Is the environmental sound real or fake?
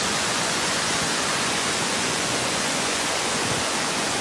fake